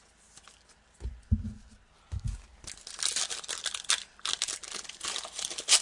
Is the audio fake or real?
real